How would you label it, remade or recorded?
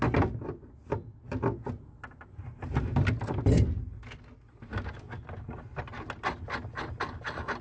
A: recorded